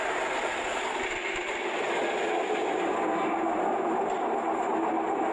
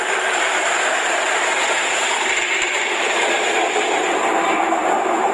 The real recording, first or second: first